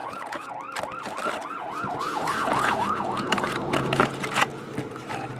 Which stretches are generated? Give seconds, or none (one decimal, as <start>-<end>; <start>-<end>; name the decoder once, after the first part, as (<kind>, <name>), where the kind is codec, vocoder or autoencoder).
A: 0.0-0.5 (vocoder, Vocos); 1.4-4.6